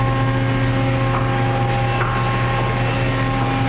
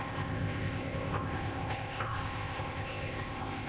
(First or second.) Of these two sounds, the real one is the first